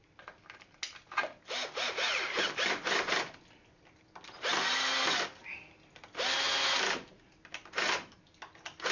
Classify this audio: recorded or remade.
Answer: recorded